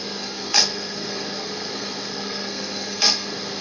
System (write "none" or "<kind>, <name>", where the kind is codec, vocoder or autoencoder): codec, SNAC